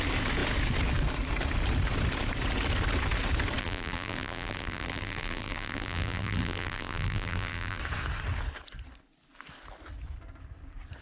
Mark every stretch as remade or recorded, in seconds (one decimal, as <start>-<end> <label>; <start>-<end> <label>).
0.0-3.6 recorded; 3.6-7.8 remade; 7.8-11.0 recorded

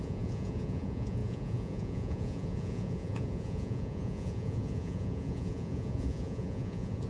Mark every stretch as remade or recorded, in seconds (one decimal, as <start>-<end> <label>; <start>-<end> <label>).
0.0-7.1 remade

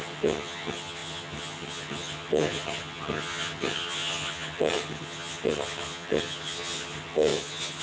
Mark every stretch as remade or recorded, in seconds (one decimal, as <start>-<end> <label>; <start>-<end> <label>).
0.0-7.8 remade

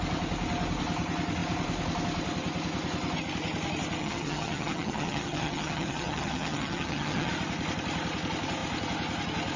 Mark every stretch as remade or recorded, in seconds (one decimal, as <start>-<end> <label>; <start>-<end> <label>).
0.0-4.0 recorded; 4.0-7.3 remade; 7.3-9.6 recorded

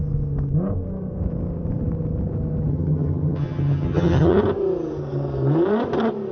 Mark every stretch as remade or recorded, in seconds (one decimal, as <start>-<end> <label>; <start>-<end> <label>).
0.0-2.7 recorded; 2.7-4.4 remade; 4.4-6.3 recorded

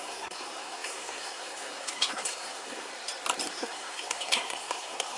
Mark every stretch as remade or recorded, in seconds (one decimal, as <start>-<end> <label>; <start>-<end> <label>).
0.0-2.9 remade; 2.9-3.5 recorded; 3.5-5.2 remade

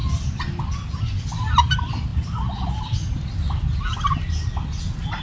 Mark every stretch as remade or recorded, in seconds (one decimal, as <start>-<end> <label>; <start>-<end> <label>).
0.0-5.2 recorded